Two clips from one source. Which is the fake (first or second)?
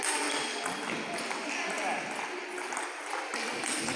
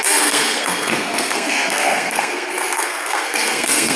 second